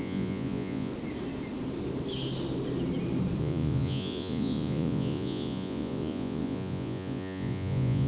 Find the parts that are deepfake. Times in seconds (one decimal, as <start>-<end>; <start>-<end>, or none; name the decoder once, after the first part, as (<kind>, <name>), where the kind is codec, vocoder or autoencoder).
0.0-0.9 (vocoder, Vocos); 3.4-8.1